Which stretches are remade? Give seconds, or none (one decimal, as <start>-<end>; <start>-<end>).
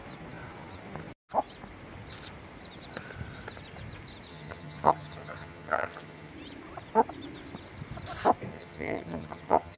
4.3-6.3; 8.5-9.8